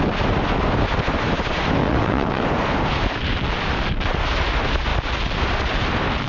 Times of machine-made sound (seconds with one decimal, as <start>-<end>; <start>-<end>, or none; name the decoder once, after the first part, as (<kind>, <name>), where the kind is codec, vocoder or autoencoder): 1.8-2.4 (vocoder, WaveNeXt)